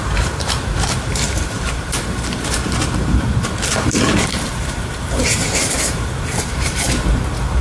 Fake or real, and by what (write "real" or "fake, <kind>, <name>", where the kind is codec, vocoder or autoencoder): fake, vocoder, BigVGAN v2